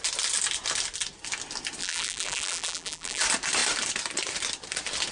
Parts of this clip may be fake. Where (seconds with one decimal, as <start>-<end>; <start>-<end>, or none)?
1.8-3.2

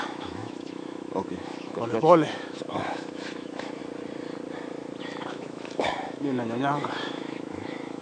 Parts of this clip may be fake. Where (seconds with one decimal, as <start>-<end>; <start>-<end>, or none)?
0.0-3.8; 5.0-8.0